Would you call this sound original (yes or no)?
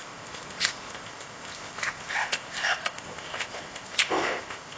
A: no